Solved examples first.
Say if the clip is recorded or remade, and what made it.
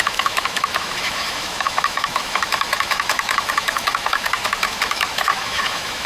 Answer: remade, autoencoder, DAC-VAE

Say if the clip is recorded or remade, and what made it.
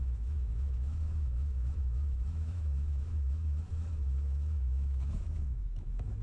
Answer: remade, autoencoder, DAC-VAE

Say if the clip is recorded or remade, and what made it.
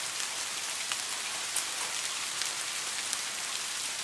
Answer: recorded